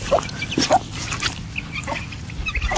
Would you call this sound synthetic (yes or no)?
no